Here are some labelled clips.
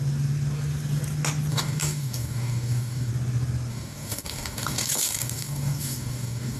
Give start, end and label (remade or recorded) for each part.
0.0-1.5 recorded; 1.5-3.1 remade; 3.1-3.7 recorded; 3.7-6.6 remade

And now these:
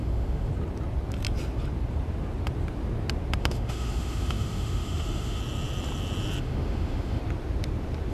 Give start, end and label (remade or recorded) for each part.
0.0-0.5 remade; 0.5-3.4 recorded; 3.4-5.4 remade; 5.4-6.4 recorded; 6.4-7.2 remade; 7.2-8.1 recorded

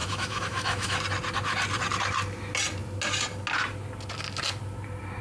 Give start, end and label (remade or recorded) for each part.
0.0-1.0 remade; 1.0-5.2 recorded

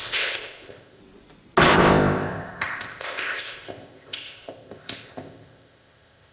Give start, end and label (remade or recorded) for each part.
0.0-1.0 remade; 1.0-1.7 recorded; 1.7-6.3 remade

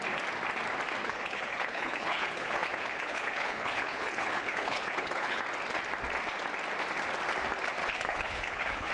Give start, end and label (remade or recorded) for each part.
0.0-1.0 recorded; 1.0-5.4 remade; 5.4-7.8 recorded; 7.8-8.9 remade